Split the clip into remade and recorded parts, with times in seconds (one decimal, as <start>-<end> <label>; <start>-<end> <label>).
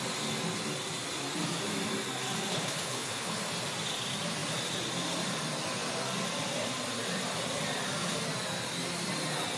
0.0-2.5 recorded; 2.5-3.4 remade; 3.4-9.6 recorded